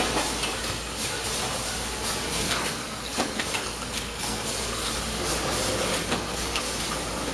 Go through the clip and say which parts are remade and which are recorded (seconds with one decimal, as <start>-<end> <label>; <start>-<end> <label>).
0.0-2.3 recorded; 2.3-4.9 remade; 4.9-6.0 recorded; 6.0-6.6 remade; 6.6-7.3 recorded